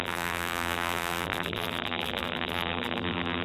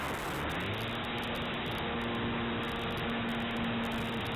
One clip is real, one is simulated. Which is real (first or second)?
second